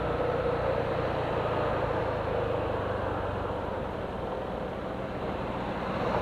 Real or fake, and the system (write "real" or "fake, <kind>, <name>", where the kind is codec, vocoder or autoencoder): real